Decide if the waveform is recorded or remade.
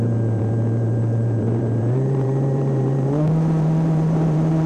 remade